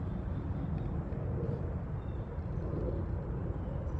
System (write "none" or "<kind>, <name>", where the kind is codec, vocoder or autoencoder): none